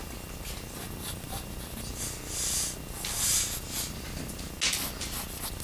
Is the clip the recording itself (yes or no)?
yes